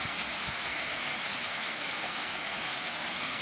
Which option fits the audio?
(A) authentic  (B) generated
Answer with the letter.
B